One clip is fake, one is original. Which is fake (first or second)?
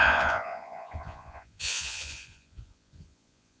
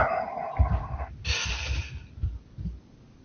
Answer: first